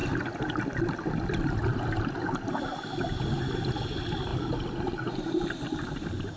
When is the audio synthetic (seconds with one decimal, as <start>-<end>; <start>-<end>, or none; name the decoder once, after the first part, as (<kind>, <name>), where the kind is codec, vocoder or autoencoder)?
none